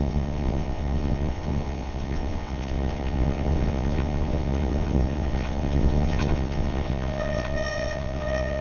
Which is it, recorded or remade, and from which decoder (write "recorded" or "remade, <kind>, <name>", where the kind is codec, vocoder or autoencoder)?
remade, vocoder, WaveNeXt